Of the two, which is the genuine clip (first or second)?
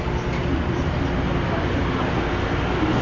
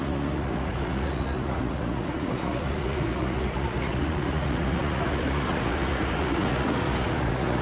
first